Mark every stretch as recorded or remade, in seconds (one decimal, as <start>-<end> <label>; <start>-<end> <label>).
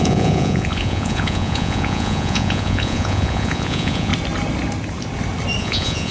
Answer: 0.0-4.1 remade; 4.1-5.6 recorded; 5.6-6.1 remade